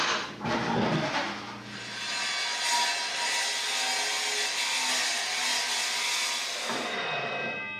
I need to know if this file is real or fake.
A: real